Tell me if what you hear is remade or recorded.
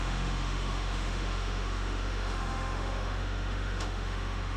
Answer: remade